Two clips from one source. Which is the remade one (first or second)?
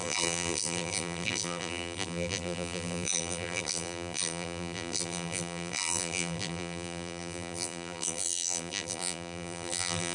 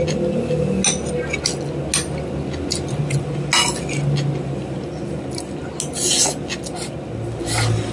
first